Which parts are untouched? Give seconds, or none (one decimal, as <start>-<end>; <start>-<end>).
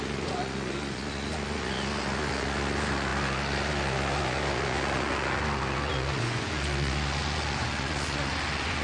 none